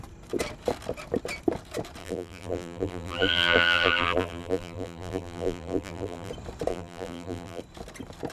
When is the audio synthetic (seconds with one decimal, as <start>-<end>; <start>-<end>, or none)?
2.0-6.3; 6.7-7.6